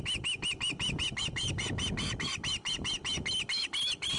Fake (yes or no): no